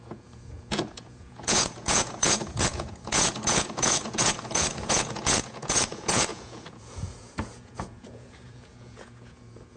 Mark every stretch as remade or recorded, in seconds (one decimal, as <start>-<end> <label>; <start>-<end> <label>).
0.0-9.8 remade